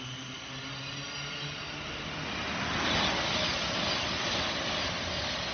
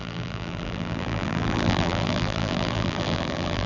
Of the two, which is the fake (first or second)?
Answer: second